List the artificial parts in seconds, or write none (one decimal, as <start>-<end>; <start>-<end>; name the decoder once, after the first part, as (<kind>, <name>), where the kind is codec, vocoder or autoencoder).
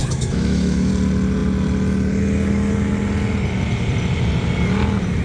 0.0-0.9 (autoencoder, DAC-VAE)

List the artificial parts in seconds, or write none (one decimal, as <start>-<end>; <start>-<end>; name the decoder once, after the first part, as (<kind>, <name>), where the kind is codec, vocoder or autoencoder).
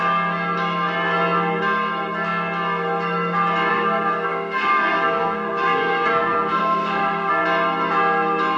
3.7-7.3 (codec, SNAC)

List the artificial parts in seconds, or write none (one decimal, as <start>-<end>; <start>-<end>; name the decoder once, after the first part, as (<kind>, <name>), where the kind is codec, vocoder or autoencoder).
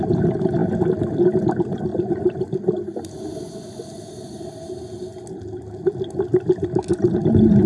none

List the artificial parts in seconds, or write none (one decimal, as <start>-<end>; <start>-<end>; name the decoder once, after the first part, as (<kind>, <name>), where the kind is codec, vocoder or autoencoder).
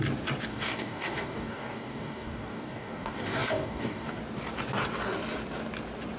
0.5-4.2 (codec, DAC)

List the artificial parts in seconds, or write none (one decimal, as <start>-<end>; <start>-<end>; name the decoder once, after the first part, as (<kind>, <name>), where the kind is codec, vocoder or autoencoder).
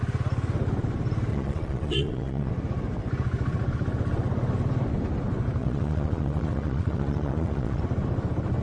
1.3-2.5 (vocoder, Vocos); 5.6-7.8